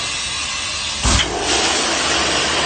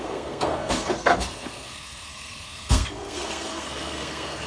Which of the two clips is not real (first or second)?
second